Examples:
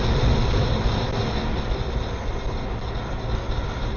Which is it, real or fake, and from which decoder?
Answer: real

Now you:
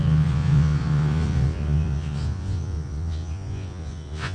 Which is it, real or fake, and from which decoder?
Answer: fake, vocoder, Vocos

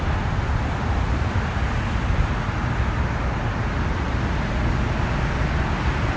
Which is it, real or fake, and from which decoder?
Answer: real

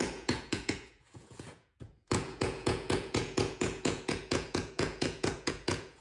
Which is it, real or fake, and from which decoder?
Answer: fake, vocoder, Vocos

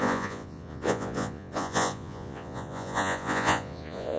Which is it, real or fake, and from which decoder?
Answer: fake, vocoder, Vocos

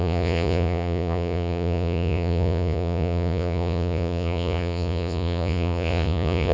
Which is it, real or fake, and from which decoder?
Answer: fake, vocoder, Vocos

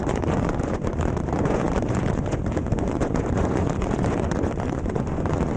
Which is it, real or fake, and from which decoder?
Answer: fake, vocoder, Vocos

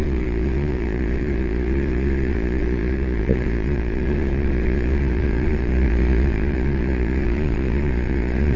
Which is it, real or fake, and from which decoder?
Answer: fake, vocoder, Vocos